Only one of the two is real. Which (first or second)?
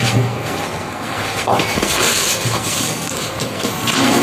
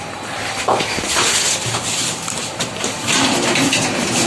second